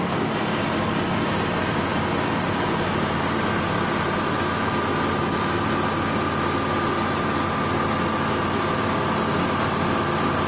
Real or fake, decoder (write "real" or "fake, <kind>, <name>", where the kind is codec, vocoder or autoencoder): real